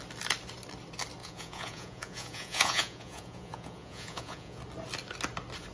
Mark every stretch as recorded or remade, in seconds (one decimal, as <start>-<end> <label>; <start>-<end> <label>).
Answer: 0.0-1.2 recorded; 1.2-4.6 remade; 4.6-5.7 recorded